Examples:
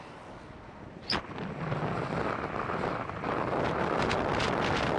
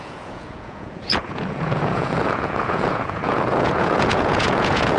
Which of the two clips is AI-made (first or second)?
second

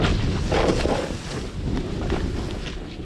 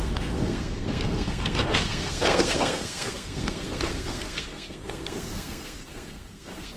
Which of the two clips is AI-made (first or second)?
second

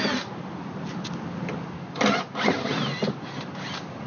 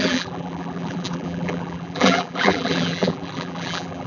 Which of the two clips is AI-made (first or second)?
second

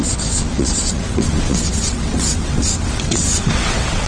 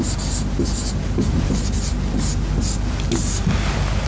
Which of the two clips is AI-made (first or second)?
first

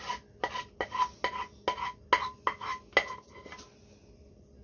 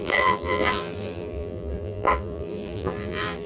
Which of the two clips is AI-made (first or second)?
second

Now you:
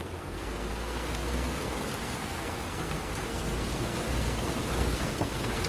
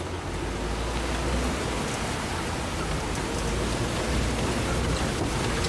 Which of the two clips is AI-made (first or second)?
first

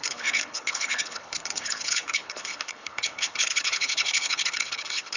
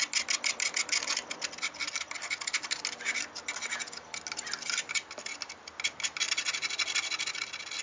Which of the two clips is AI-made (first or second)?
first